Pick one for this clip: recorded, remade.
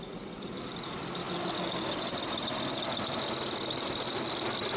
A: recorded